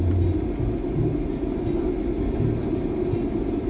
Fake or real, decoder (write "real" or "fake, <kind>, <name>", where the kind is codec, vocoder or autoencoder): real